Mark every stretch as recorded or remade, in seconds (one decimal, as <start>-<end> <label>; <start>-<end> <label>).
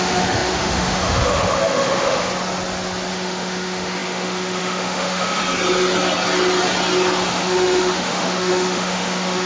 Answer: 0.0-2.3 remade; 2.3-3.1 recorded; 3.1-5.4 remade; 5.4-7.3 recorded; 7.3-9.5 remade